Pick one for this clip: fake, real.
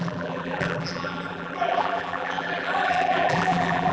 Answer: fake